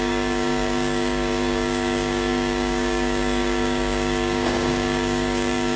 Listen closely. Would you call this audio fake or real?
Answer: fake